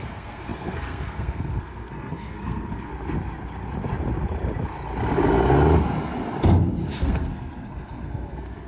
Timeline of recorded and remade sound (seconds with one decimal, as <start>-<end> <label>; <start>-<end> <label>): 0.0-2.9 remade; 2.9-7.0 recorded; 7.0-8.7 remade